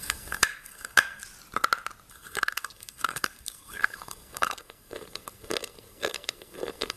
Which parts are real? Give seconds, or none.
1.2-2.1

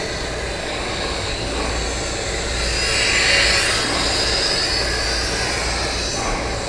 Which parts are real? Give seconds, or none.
0.0-0.6; 1.7-6.7

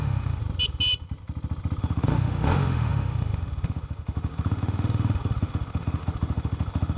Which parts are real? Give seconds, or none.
0.4-1.8

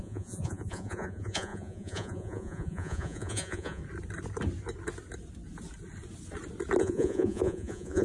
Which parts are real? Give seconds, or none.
3.8-6.8

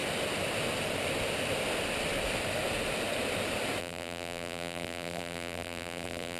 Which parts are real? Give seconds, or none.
0.0-3.8

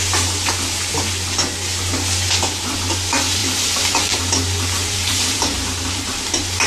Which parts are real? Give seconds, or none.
0.0-3.4; 4.2-4.8; 6.1-6.7

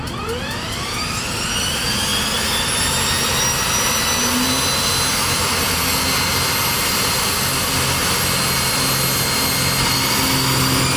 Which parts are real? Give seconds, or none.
0.0-11.0